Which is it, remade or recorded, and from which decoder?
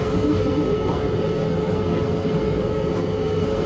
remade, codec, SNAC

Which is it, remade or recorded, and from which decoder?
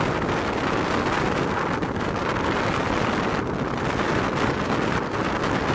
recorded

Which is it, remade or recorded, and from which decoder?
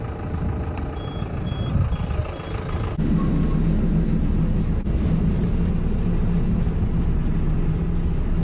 recorded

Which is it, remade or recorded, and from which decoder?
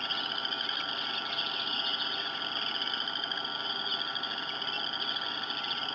recorded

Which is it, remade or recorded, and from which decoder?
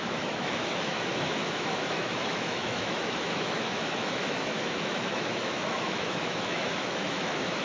remade, autoencoder, DAC-VAE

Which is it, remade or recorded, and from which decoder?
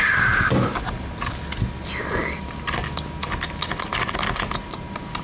recorded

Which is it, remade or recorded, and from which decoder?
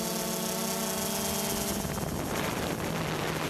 recorded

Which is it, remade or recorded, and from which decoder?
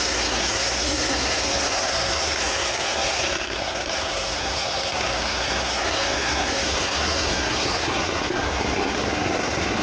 remade, codec, SNAC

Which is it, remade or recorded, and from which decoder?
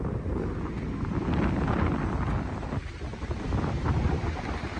recorded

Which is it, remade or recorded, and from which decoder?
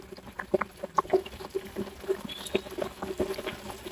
recorded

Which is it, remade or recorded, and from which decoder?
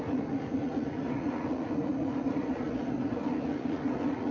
remade, vocoder, Vocos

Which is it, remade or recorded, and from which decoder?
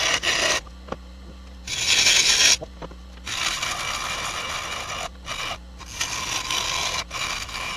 recorded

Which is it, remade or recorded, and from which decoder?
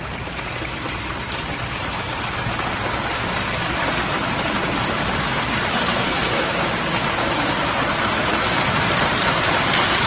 recorded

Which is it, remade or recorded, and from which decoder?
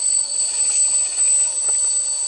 recorded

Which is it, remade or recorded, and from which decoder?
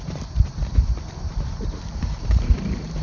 remade, vocoder, BigVGAN v2